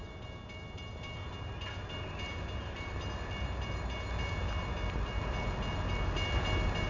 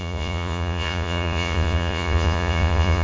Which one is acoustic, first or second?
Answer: first